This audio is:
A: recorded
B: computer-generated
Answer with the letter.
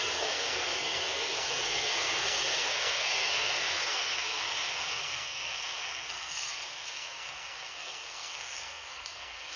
B